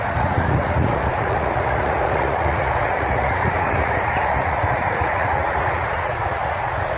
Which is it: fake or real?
fake